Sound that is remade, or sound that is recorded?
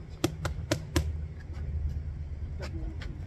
recorded